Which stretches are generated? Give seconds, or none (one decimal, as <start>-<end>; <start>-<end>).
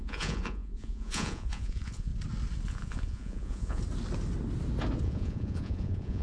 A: 0.0-2.1; 2.7-3.8; 5.0-6.2